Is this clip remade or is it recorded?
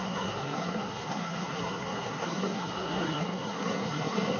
remade